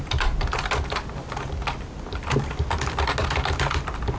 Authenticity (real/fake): real